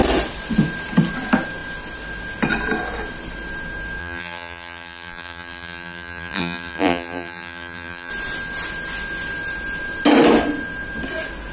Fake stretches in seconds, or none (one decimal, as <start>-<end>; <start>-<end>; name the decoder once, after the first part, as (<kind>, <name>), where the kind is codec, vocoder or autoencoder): 4.0-8.1 (vocoder, BigVGAN v2)